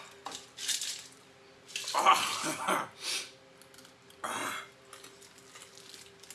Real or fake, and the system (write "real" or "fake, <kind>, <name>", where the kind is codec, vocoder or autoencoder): real